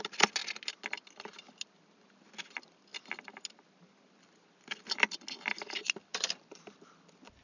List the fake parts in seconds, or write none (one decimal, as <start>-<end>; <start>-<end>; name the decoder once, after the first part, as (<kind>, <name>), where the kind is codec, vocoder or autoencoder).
6.1-6.8 (vocoder, BigVGAN v2)